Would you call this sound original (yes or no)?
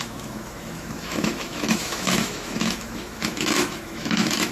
no